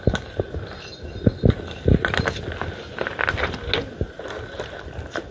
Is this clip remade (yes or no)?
no